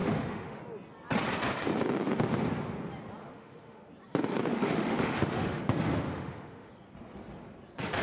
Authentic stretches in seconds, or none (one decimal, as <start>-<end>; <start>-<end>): 0.6-3.2; 3.9-4.5; 5.6-6.1; 6.7-8.0